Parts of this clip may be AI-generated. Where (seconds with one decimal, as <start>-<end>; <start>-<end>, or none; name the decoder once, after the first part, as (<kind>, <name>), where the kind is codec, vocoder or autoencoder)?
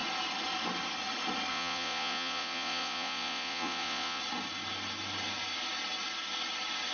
1.5-4.2 (vocoder, Vocos)